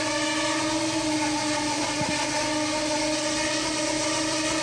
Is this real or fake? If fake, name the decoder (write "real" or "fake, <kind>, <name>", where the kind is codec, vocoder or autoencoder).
real